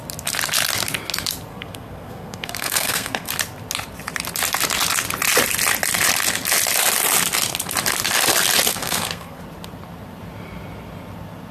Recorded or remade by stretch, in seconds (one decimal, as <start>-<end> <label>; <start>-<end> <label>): 0.0-1.5 recorded; 1.5-3.3 remade; 3.3-8.7 recorded; 8.7-9.4 remade; 9.4-11.5 recorded